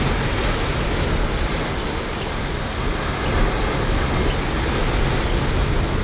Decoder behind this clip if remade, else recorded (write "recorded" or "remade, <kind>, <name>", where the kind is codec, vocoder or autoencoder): recorded